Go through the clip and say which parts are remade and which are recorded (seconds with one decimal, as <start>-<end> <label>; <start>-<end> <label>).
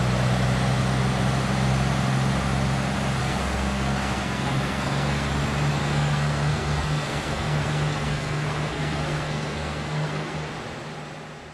0.0-3.2 recorded; 3.2-5.3 remade; 5.3-5.8 recorded; 5.8-10.5 remade; 10.5-11.5 recorded